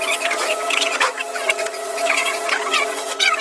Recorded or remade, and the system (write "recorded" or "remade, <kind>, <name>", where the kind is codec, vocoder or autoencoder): remade, vocoder, Vocos